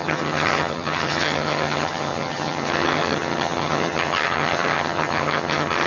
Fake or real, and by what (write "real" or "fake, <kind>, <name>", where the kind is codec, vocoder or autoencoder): fake, vocoder, HiFi-GAN